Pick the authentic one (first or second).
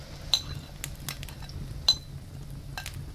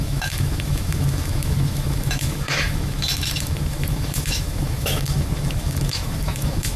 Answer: first